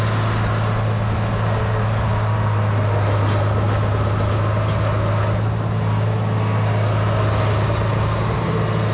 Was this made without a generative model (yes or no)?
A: yes